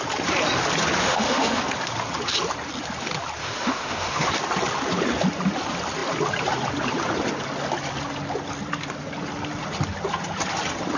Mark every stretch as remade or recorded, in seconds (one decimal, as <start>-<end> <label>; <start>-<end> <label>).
0.0-1.0 recorded; 1.0-1.6 remade; 1.6-3.4 recorded; 3.4-4.3 remade; 4.3-11.0 recorded